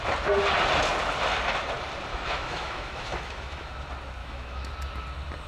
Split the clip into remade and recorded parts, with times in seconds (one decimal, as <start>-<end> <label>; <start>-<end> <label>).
0.0-2.1 recorded; 2.1-3.7 remade; 3.7-4.2 recorded; 4.2-4.7 remade; 4.7-5.5 recorded